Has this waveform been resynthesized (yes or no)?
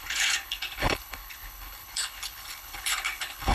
yes